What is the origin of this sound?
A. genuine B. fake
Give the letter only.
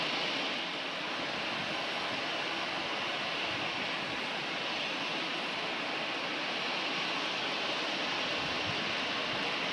A